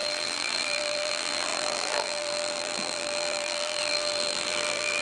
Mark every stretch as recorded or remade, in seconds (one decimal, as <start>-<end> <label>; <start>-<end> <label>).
0.0-5.0 remade